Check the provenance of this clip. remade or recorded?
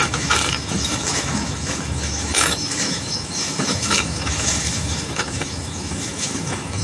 remade